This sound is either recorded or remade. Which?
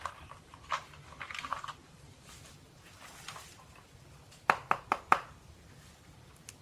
remade